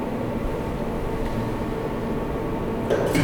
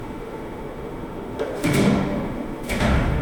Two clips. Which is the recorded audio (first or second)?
first